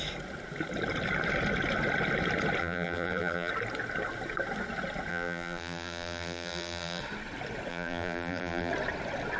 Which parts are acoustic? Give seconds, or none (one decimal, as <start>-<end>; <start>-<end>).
0.0-2.6; 3.5-5.1; 7.0-7.7; 8.7-9.4

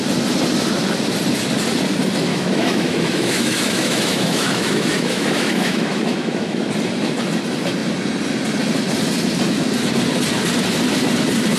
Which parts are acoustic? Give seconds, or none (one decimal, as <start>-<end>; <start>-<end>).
0.0-2.3; 6.7-11.6